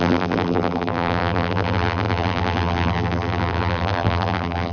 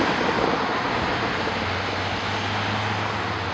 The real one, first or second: second